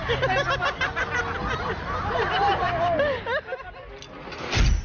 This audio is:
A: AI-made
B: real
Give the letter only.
B